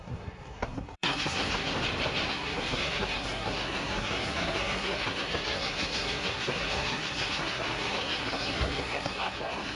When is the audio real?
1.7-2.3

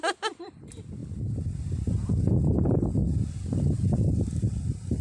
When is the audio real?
0.0-5.0

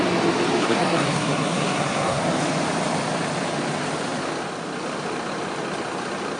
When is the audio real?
0.0-0.6; 2.2-6.4

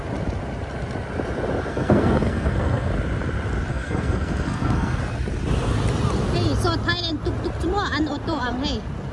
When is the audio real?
0.0-1.7; 2.9-3.7; 5.0-9.1